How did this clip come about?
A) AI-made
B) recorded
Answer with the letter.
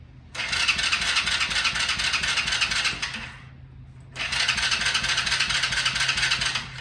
B